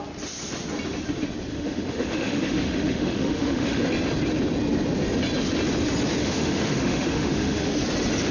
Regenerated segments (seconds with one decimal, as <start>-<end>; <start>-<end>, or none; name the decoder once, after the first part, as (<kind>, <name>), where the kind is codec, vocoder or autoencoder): 1.5-3.8 (autoencoder, DAC-VAE); 6.2-7.7